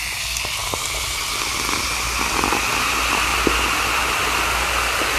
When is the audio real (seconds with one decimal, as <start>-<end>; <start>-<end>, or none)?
0.0-5.2